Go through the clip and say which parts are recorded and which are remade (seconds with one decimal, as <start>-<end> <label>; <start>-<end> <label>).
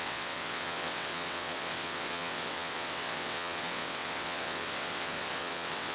0.0-5.9 remade